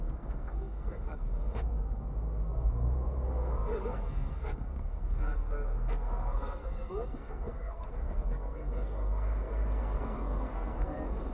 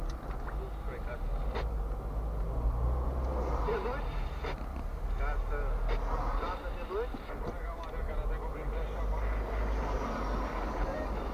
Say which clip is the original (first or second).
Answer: second